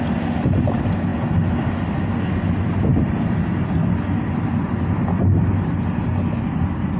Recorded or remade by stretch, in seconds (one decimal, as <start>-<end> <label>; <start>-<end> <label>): 0.0-7.0 recorded